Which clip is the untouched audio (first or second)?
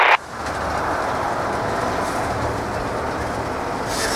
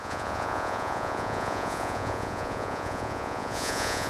first